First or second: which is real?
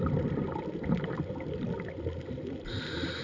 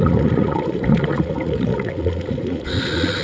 first